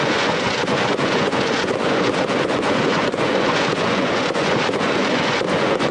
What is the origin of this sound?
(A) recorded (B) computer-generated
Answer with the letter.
B